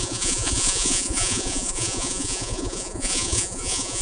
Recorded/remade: remade